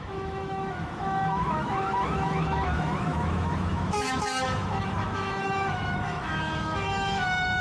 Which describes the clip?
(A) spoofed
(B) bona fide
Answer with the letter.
A